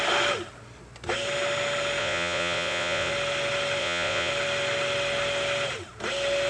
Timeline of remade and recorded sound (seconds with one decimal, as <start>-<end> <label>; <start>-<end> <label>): 0.0-2.0 recorded; 2.0-3.1 remade; 3.1-3.8 recorded; 3.8-4.3 remade; 4.3-6.5 recorded